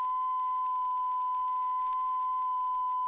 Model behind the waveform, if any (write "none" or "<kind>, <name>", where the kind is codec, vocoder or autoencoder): none